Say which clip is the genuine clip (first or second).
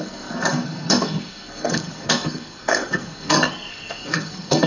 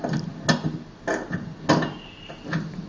second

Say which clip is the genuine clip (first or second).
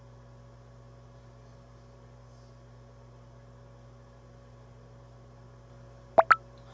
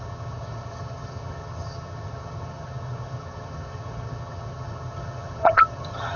first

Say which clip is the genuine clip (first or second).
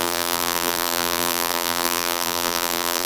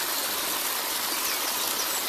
second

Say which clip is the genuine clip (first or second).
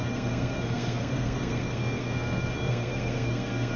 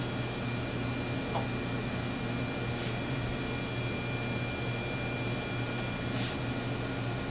second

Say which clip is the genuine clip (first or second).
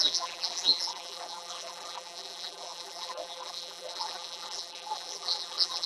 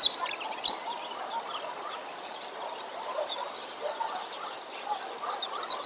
second